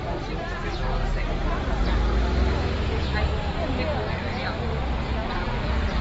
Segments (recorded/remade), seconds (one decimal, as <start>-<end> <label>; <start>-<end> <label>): 0.0-5.2 recorded; 5.2-6.0 remade